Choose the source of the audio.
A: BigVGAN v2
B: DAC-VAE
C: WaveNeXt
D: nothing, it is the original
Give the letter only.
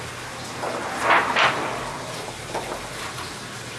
D